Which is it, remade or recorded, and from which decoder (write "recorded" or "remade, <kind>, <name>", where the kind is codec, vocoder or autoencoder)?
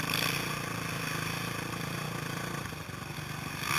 recorded